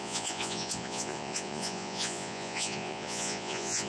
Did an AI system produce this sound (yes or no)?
yes